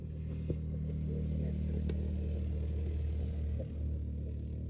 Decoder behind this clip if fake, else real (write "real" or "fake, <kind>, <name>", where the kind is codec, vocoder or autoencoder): real